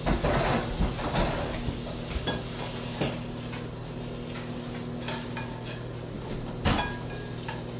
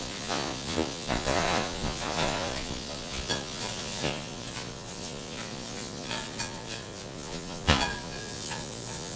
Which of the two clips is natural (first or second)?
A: first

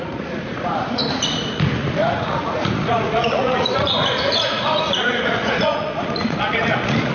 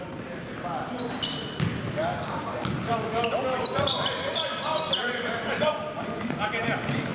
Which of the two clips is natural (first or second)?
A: second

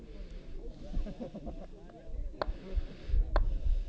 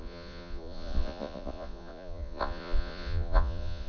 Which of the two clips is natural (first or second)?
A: first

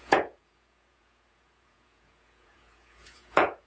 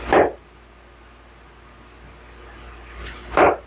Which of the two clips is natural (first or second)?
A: second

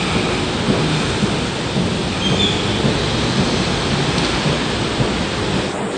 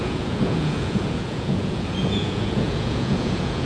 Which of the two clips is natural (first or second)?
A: first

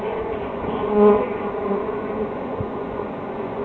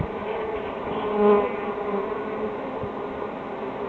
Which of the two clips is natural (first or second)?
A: second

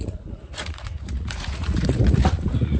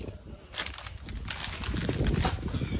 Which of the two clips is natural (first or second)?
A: second